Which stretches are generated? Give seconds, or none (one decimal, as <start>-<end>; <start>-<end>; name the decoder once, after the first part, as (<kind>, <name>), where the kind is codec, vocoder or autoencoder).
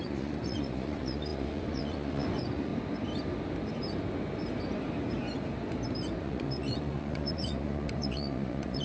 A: 0.0-2.7 (vocoder, Vocos); 6.2-8.8